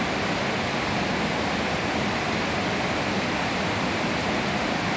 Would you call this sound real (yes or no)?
no